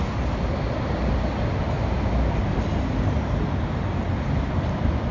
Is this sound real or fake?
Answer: real